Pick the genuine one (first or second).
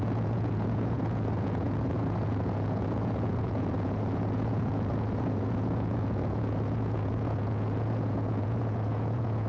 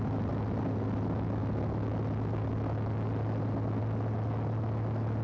second